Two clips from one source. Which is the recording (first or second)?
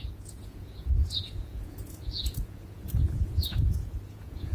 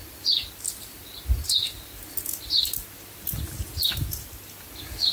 second